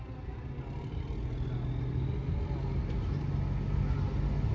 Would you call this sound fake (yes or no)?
no